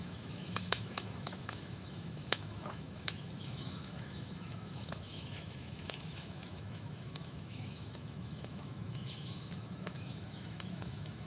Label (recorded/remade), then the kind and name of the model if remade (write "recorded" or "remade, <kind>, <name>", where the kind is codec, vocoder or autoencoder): remade, autoencoder, DAC-VAE